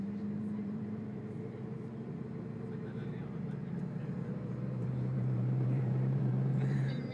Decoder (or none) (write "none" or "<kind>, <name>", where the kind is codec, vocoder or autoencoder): vocoder, BigVGAN v2